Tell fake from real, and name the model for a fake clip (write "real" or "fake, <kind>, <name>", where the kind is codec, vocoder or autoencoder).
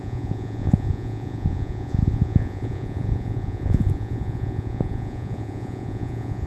fake, vocoder, Vocos